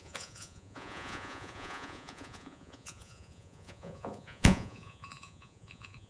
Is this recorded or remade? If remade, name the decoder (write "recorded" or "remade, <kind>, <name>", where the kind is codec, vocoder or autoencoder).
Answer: remade, vocoder, Vocos